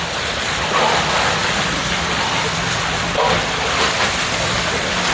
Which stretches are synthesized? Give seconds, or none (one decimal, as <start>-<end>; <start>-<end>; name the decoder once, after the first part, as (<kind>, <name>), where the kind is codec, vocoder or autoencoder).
none